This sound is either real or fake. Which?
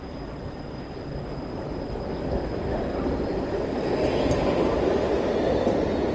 real